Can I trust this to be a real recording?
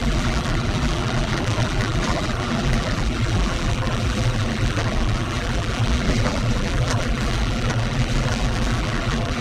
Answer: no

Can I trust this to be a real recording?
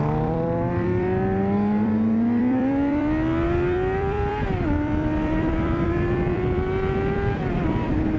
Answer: no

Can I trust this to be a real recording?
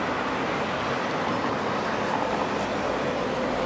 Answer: yes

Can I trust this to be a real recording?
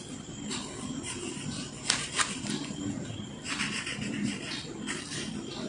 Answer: yes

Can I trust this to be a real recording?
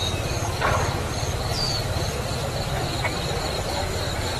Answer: yes